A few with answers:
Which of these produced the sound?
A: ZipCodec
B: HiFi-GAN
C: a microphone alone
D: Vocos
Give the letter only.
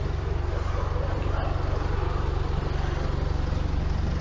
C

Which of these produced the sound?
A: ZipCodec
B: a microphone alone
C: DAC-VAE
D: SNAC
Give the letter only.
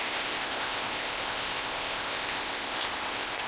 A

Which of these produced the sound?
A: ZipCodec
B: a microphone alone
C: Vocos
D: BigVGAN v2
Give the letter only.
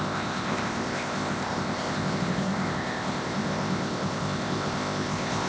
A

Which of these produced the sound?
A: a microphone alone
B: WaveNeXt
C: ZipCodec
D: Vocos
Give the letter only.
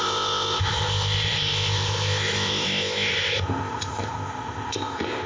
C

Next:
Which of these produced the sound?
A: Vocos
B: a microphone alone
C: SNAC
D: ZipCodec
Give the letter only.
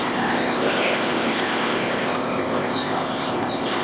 D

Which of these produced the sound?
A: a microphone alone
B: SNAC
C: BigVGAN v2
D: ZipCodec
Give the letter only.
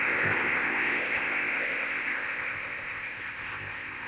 D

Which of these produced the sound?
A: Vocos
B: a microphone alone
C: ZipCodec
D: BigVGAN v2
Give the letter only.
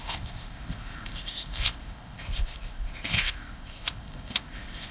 C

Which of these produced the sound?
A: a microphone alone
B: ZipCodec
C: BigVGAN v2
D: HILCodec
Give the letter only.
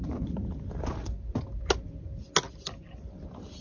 A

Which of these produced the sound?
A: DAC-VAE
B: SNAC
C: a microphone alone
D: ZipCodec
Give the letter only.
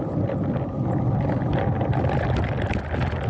C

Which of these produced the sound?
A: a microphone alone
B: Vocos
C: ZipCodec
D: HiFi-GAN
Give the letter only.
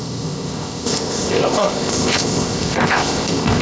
C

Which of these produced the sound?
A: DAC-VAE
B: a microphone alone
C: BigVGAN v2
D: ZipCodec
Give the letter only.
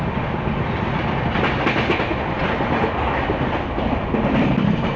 B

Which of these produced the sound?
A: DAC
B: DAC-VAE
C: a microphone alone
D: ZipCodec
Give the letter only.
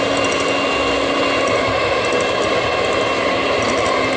C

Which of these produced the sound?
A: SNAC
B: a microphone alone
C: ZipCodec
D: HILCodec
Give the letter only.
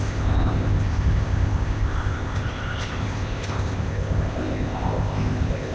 C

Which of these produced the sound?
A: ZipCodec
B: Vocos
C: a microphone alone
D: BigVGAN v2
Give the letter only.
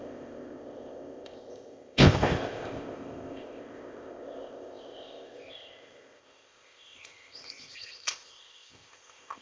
A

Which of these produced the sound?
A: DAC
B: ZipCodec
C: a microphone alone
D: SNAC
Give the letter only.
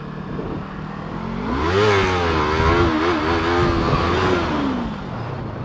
C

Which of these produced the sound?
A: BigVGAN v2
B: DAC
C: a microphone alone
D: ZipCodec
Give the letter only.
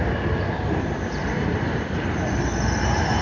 C